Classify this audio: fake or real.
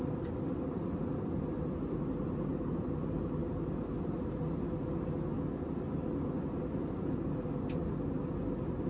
real